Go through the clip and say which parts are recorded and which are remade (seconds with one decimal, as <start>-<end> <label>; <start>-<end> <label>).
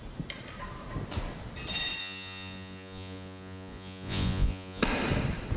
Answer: 0.0-2.0 recorded; 2.0-4.8 remade; 4.8-5.6 recorded